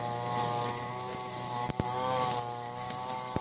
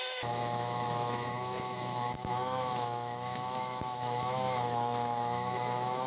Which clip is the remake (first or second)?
second